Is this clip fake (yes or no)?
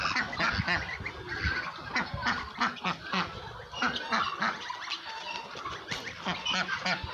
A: no